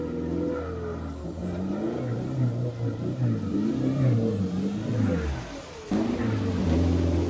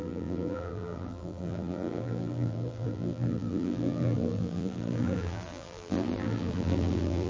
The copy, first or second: second